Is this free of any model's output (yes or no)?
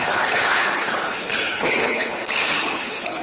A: no